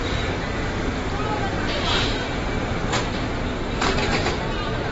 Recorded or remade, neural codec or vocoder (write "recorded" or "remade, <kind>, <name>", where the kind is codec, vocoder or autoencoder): recorded